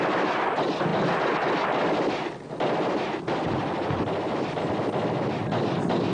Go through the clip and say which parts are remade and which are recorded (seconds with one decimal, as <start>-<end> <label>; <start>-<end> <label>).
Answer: 0.0-6.1 recorded

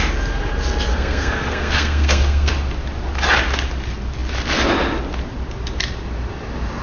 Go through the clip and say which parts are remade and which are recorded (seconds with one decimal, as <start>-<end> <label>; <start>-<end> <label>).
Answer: 0.0-0.9 recorded; 0.9-2.5 remade; 2.5-6.8 recorded

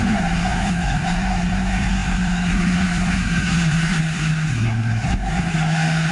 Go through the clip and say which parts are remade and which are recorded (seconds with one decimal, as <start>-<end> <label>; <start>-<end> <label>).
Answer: 0.0-6.1 remade

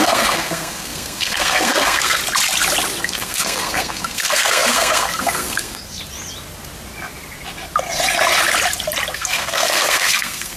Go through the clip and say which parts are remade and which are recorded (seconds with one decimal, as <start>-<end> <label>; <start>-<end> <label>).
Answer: 0.0-2.2 remade; 2.2-3.0 recorded; 3.0-6.0 remade; 6.0-9.1 recorded; 9.1-10.6 remade

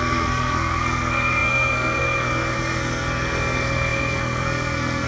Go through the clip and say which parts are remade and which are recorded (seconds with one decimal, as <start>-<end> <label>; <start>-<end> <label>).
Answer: 0.0-5.1 remade

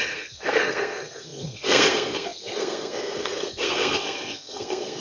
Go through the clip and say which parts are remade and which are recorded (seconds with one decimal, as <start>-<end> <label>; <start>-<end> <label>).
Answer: 0.0-5.0 remade